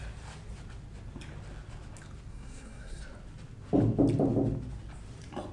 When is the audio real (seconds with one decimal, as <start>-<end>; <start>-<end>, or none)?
0.0-2.3; 3.0-5.5